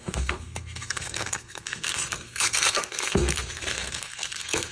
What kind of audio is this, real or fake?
fake